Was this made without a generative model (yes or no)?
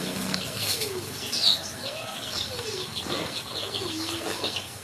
no